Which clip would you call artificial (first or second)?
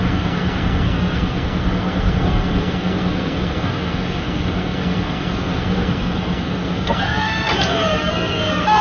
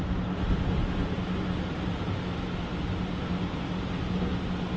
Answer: first